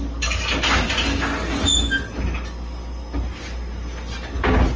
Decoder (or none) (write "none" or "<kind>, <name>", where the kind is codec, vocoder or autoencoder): none